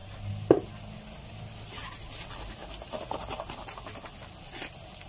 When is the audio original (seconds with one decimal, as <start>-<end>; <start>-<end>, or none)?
0.0-5.1

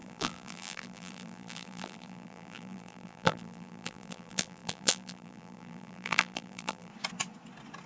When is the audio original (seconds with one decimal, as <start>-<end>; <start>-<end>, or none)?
6.9-7.9